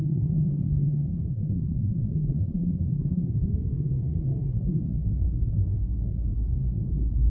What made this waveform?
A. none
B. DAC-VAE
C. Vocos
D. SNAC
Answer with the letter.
D